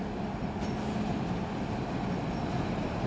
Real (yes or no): yes